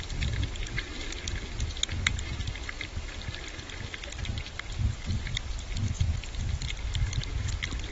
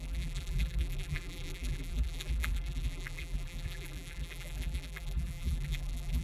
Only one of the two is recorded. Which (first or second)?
first